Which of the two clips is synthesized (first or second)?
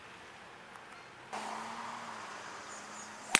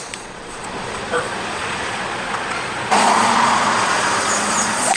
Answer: second